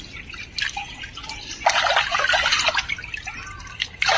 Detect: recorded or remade recorded